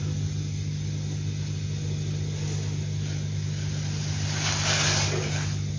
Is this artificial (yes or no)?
no